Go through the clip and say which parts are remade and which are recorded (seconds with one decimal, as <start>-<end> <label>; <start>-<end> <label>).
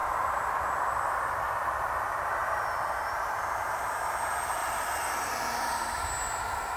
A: 0.0-0.5 remade; 0.5-4.6 recorded; 4.6-6.1 remade; 6.1-6.8 recorded